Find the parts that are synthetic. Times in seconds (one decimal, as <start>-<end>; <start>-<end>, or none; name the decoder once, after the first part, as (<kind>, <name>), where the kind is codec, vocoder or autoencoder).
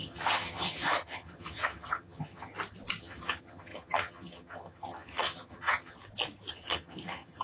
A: 0.0-2.5 (vocoder, HiFi-GAN); 3.0-6.0; 6.5-7.4